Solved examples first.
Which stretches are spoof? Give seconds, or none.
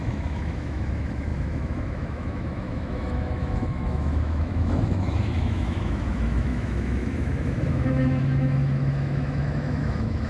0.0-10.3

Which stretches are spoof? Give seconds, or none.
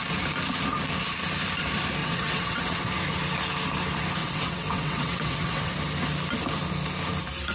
2.0-2.9; 4.2-5.7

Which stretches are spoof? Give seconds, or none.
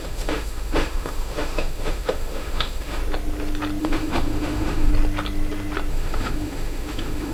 0.0-3.0; 3.8-4.9; 5.9-7.3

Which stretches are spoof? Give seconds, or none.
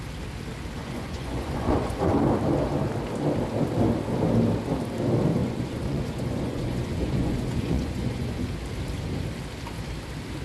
0.8-2.1; 5.4-8.5